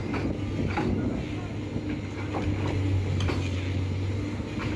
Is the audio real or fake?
real